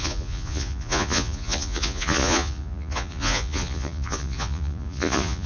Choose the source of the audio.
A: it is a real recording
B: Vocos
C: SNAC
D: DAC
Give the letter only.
B